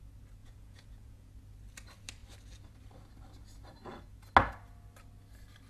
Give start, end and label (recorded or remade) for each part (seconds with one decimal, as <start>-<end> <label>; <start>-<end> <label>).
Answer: 0.0-0.4 recorded; 0.4-1.3 remade; 1.3-5.7 recorded